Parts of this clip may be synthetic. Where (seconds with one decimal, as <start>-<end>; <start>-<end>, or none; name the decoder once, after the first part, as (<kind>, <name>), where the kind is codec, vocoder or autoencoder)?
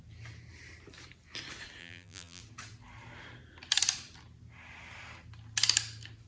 1.8-2.4 (vocoder, BigVGAN v2)